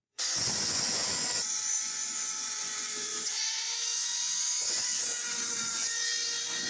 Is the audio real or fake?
fake